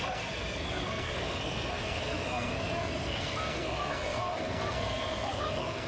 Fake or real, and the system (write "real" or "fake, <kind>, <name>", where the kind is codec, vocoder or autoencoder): fake, codec, SNAC